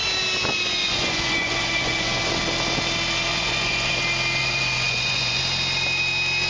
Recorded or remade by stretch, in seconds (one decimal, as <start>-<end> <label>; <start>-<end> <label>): 0.0-0.8 recorded; 0.8-2.2 remade; 2.2-3.3 recorded; 3.3-4.0 remade; 4.0-4.4 recorded; 4.4-5.4 remade; 5.4-6.5 recorded